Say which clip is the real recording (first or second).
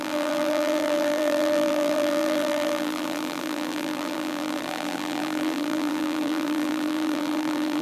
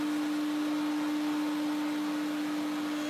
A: second